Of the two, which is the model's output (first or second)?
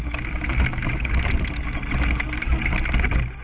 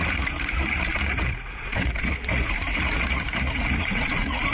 second